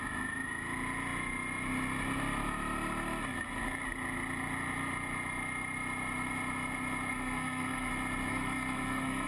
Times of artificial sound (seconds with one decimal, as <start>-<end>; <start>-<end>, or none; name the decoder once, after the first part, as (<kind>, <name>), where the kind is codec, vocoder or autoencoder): 7.1-7.9 (codec, SNAC); 8.3-9.3